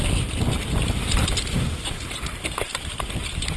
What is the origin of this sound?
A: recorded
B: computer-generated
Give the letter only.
A